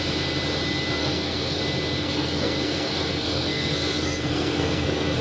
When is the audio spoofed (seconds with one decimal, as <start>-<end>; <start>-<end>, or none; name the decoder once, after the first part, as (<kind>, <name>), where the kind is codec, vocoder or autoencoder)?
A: 1.0-1.6 (codec, SNAC); 2.0-5.2

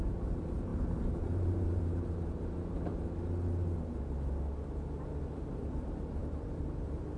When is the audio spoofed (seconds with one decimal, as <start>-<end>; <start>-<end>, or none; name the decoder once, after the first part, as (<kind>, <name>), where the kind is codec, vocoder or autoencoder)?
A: 0.0-2.9 (vocoder, BigVGAN v2); 5.2-7.2

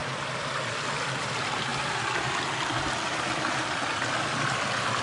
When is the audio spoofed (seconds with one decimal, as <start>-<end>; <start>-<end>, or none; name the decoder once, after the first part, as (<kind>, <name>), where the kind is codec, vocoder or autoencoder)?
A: 0.0-0.6 (vocoder, BigVGAN v2)